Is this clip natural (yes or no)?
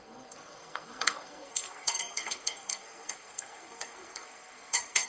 no